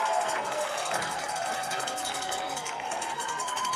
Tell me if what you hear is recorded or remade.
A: remade